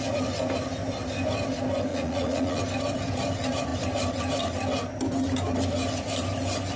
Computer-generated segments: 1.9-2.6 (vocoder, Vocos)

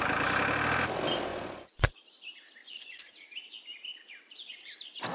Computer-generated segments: 1.3-1.9 (vocoder, Vocos); 2.6-3.1

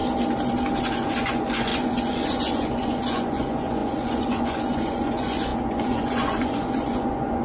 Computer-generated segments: 0.8-7.4 (vocoder, Vocos)

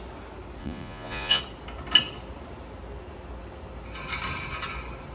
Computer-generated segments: 0.6-1.4 (vocoder, Vocos)

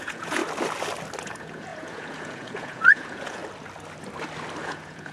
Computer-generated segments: 0.0-0.4 (vocoder, Vocos); 1.2-3.4; 4.6-5.1

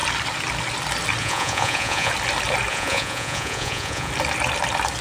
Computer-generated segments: 1.2-2.1 (vocoder, Vocos); 2.7-4.1